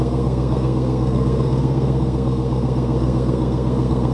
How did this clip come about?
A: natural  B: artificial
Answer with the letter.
B